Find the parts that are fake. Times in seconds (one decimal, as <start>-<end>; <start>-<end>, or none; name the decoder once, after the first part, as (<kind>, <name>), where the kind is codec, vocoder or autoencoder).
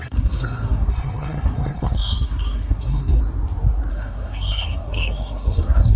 0.0-3.2 (codec, SNAC); 3.9-6.0